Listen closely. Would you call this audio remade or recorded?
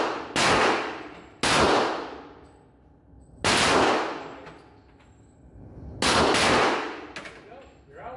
recorded